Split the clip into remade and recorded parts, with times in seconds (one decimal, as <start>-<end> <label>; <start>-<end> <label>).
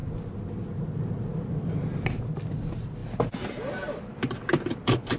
0.0-5.2 recorded